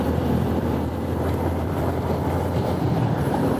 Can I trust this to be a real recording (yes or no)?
no